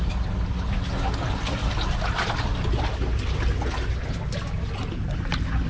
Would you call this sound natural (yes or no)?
yes